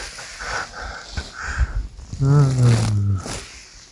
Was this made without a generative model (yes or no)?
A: yes